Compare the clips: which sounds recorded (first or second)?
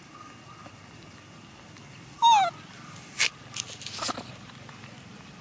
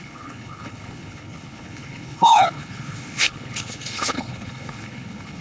first